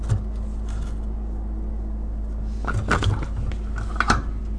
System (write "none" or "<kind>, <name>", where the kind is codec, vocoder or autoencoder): none